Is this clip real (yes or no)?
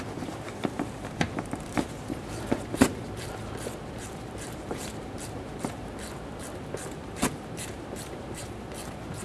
no